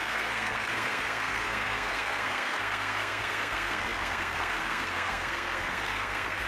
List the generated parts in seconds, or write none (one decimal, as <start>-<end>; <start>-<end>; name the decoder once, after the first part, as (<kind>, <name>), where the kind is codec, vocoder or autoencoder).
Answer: 0.0-6.5 (codec, SNAC)